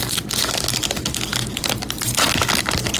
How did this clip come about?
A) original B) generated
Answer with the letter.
A